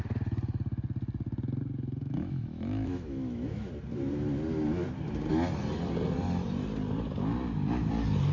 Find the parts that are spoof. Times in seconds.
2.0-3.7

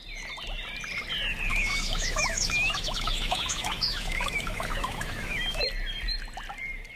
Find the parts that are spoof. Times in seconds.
1.5-5.6

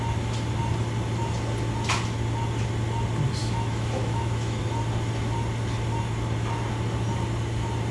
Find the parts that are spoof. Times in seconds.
3.4-4.6

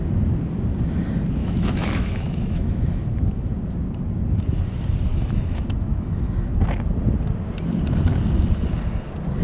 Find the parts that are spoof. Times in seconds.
1.4-3.5; 5.1-6.3

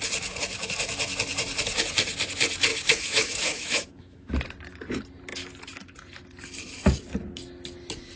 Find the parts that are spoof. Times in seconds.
2.7-4.3

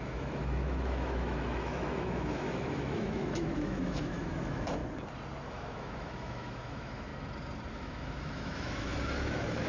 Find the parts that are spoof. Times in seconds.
0.0-4.8; 5.5-7.1; 7.7-9.7